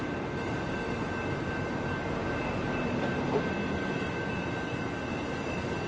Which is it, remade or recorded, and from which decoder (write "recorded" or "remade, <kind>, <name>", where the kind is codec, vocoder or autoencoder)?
recorded